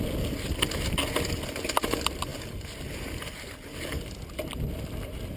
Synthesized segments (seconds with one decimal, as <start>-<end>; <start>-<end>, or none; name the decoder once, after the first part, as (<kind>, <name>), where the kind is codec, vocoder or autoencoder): none